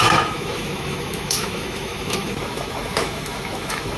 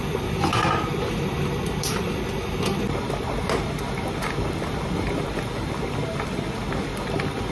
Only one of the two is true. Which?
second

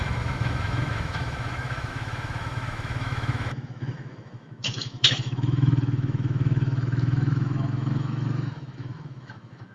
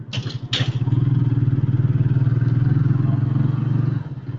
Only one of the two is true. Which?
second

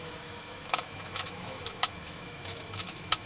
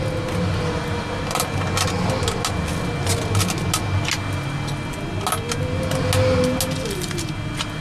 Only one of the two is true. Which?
second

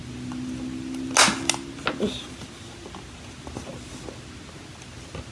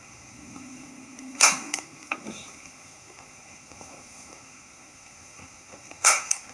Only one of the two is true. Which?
first